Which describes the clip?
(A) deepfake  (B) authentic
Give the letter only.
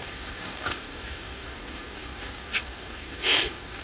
A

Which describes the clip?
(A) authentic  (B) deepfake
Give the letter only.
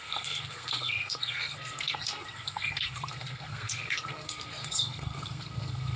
B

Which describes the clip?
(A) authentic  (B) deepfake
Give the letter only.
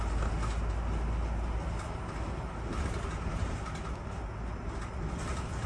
A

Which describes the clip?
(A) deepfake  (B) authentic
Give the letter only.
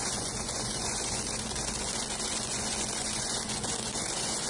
A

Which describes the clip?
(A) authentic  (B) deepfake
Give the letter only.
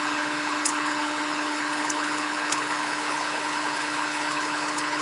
B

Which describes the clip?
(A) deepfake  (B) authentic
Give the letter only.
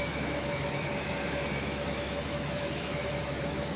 A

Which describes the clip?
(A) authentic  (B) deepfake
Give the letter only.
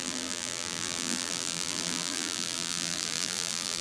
B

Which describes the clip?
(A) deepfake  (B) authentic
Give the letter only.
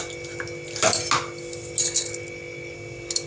B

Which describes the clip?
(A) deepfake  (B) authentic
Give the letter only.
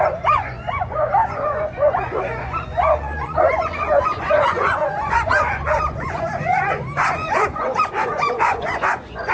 A